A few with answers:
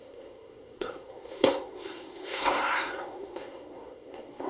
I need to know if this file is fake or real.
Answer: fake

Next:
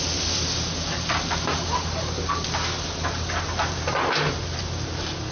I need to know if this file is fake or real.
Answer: real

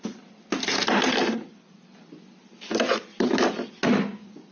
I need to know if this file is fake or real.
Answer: real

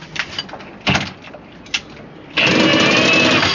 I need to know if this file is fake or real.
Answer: real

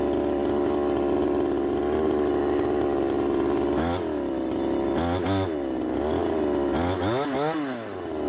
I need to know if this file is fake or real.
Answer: real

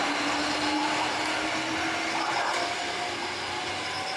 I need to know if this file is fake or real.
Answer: real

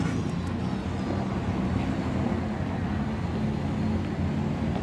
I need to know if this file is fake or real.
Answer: real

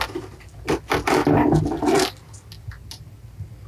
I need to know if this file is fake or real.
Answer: real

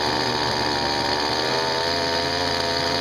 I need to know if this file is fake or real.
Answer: real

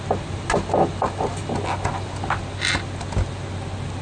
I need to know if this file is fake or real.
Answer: real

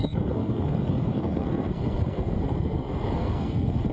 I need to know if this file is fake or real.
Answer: fake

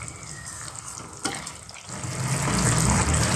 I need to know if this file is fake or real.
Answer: real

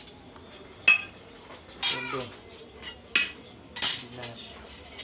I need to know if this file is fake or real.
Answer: real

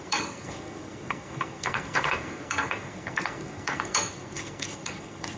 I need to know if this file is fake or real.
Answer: fake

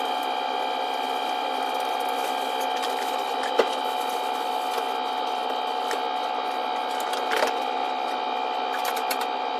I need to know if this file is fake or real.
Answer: real